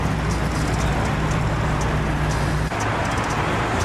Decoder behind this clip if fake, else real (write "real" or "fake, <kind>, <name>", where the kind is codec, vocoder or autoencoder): real